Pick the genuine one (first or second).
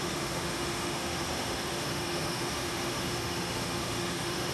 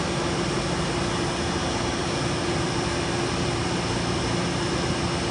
second